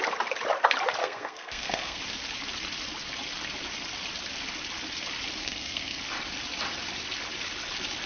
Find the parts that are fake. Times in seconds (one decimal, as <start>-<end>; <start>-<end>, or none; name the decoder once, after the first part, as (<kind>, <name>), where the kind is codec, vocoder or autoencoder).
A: 1.0-2.0 (codec, SNAC); 5.4-6.0